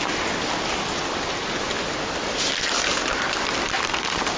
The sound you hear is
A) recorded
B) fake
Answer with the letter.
A